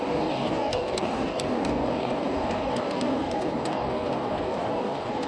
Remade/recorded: remade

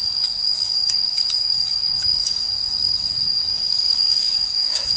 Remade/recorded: remade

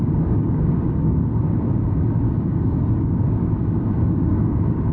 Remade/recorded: remade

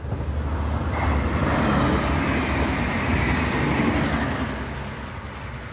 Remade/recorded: recorded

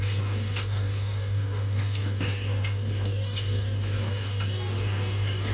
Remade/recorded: remade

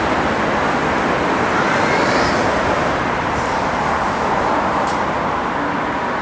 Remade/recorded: recorded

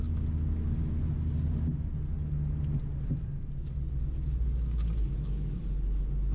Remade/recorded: recorded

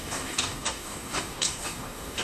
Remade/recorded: remade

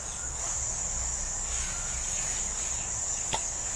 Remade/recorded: remade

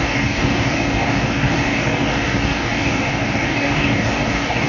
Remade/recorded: remade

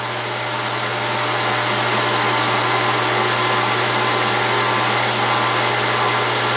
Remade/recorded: recorded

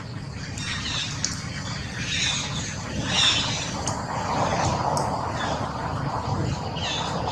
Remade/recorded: recorded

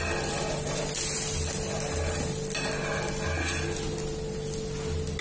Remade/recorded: recorded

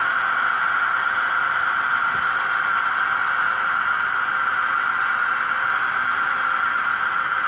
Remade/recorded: recorded